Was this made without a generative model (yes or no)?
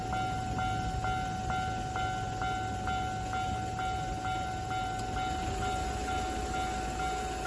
yes